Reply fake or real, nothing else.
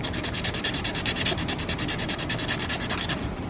fake